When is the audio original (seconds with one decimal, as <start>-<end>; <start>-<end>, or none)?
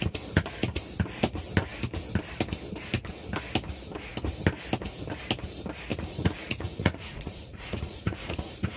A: 0.0-5.9